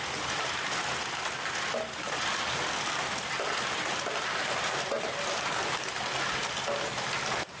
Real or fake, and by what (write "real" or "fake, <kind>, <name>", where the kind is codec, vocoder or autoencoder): real